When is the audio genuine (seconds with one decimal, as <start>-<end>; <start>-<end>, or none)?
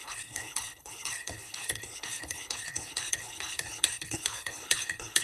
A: none